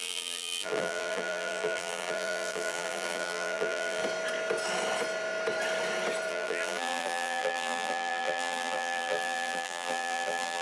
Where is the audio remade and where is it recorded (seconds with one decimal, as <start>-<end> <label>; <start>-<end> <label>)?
0.0-4.0 remade; 4.0-6.3 recorded; 6.3-10.6 remade